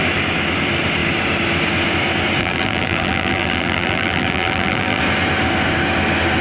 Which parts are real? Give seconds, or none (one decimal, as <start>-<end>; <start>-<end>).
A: 0.0-2.4; 5.0-6.4